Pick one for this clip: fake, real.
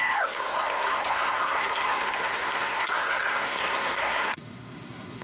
fake